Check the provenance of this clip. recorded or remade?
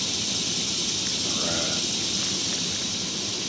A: recorded